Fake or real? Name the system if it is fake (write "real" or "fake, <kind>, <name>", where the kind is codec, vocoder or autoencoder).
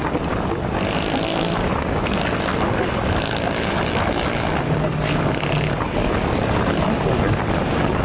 real